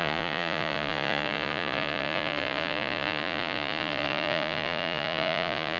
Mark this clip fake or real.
fake